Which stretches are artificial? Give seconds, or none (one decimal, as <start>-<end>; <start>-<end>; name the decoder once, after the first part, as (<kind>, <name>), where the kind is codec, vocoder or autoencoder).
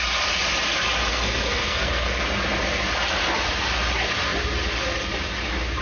1.1-2.2 (codec, SNAC)